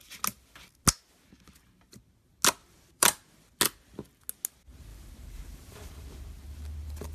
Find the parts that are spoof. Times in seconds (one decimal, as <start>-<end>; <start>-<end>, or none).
2.6-3.6; 4.9-5.9